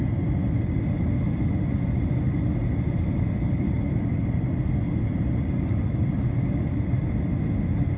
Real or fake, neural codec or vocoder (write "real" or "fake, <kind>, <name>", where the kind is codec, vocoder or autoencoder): real